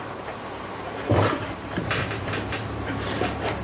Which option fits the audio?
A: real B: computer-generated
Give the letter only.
B